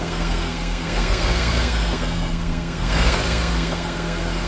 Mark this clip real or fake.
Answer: fake